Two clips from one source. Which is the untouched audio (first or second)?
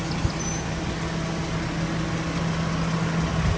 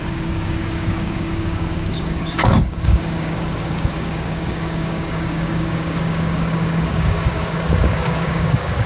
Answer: first